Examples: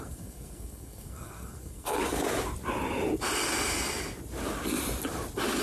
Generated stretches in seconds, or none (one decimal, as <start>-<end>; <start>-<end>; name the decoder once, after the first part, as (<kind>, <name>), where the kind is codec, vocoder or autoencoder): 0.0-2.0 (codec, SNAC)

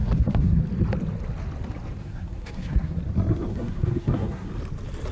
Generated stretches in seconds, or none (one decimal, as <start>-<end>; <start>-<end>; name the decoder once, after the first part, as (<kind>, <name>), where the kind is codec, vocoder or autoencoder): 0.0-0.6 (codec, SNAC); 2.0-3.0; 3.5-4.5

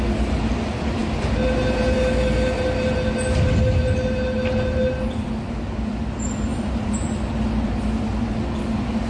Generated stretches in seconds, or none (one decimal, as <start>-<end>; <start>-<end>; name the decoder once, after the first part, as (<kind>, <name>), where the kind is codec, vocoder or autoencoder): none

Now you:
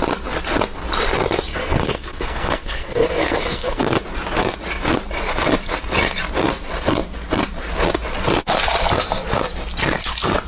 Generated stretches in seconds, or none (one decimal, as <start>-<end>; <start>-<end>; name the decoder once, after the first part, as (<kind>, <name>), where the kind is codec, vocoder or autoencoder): 1.5-4.0 (codec, SNAC)